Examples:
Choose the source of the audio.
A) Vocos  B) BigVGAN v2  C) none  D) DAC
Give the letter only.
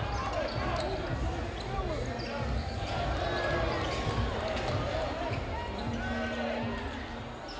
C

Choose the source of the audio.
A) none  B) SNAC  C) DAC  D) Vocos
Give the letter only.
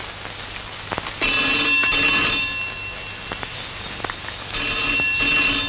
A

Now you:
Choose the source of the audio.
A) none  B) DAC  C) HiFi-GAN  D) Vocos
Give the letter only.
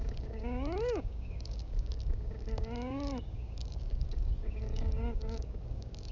B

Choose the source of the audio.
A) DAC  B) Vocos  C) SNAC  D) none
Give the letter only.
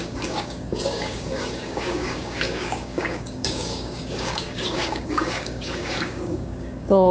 A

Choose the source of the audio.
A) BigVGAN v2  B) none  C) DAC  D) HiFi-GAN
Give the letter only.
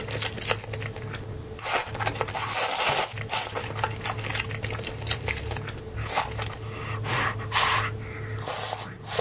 B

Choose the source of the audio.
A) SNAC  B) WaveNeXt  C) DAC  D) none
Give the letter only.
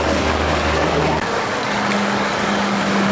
C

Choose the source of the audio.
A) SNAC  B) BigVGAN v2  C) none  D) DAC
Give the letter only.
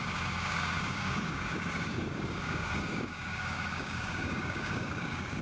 D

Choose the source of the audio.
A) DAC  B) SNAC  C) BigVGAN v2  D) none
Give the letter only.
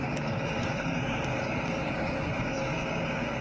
A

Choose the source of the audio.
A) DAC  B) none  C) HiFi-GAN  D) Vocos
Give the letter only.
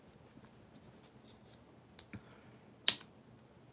B